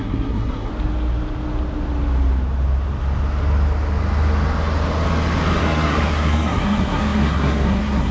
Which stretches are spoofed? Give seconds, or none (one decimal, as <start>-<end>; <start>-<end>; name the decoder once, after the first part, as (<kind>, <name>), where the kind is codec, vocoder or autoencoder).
0.0-0.7 (codec, SNAC); 5.6-8.1